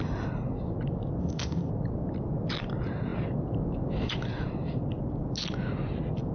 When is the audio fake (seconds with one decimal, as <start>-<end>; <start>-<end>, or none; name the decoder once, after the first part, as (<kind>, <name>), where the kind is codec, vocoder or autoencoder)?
1.2-1.7 (codec, ZipCodec)

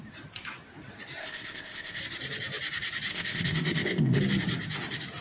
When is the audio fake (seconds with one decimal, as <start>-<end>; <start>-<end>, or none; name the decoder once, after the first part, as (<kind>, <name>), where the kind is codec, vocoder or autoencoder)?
1.2-2.0 (codec, ZipCodec); 3.1-4.2